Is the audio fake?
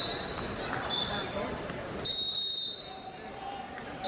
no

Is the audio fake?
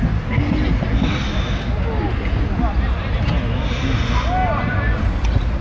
no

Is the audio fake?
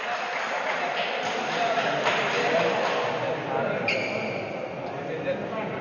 no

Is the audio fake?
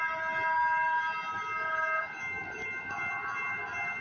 no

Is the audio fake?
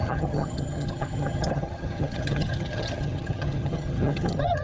yes